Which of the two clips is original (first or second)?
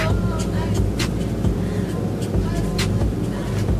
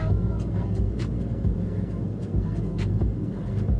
first